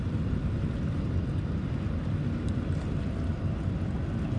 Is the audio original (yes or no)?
yes